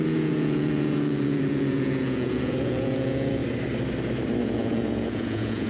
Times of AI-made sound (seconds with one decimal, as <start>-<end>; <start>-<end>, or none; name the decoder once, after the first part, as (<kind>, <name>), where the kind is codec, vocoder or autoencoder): 0.0-3.4 (vocoder, Vocos); 4.4-5.7